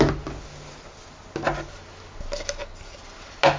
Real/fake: real